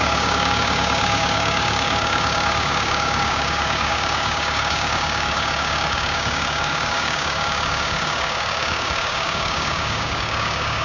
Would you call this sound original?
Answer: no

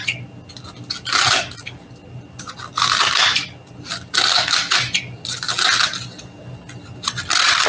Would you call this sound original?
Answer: yes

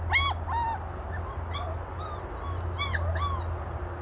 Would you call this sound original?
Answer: yes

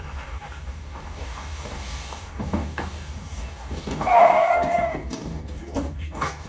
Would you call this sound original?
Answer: no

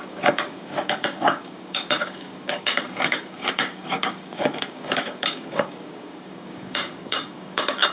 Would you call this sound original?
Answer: no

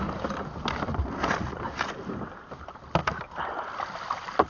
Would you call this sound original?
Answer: yes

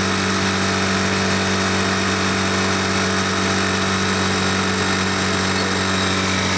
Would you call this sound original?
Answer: yes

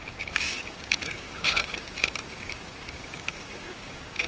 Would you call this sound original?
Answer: no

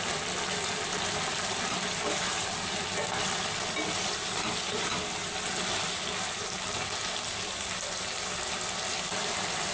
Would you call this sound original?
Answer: yes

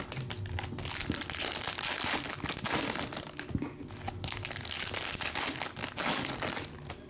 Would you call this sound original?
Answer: yes